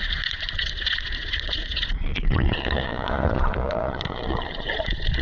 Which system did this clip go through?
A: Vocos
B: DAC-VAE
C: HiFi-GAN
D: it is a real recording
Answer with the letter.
A